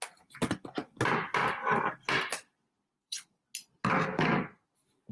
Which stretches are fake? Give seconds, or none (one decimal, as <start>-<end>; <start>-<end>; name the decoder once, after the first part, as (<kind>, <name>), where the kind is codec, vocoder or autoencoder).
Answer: 0.8-3.4 (vocoder, BigVGAN v2)